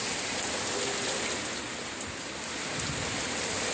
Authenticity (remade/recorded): recorded